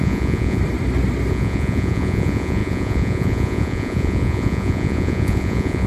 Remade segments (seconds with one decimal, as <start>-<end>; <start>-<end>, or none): 0.0-0.6; 1.3-5.9